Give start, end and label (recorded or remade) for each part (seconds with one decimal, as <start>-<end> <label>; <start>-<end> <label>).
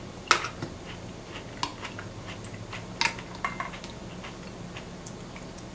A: 0.0-5.7 recorded